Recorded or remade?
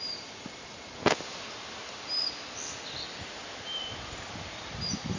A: recorded